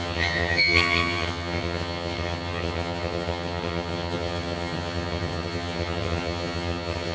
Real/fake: fake